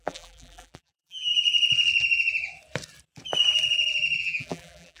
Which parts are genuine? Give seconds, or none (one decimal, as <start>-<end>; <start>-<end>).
1.3-4.2